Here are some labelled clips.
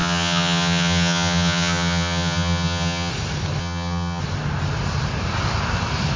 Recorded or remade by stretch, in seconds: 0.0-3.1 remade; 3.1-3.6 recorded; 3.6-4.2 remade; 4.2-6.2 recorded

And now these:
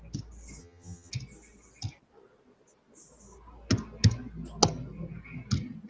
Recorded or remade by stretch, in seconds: 0.0-0.6 recorded; 0.6-1.1 remade; 1.1-5.9 recorded

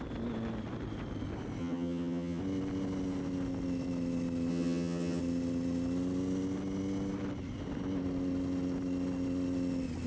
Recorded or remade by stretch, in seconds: 0.0-1.6 recorded; 1.6-2.4 remade; 2.4-4.5 recorded; 4.5-5.2 remade; 5.2-10.1 recorded

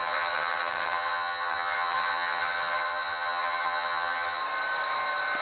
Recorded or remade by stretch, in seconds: 0.0-4.4 remade; 4.4-5.4 recorded

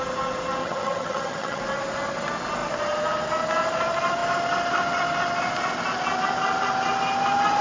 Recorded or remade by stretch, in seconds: 0.0-0.6 recorded; 0.6-1.6 remade; 1.6-7.6 recorded

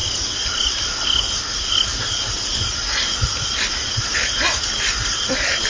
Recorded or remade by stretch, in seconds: 0.0-5.7 recorded

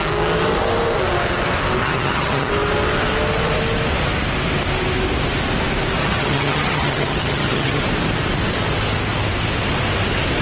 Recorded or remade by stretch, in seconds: 0.0-1.8 recorded; 1.8-2.5 remade; 2.5-6.0 recorded; 6.0-7.8 remade; 7.8-10.4 recorded

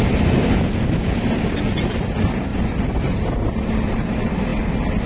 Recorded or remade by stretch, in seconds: 0.0-5.1 recorded